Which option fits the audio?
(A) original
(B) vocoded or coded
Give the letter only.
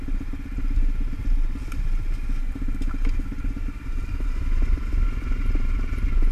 A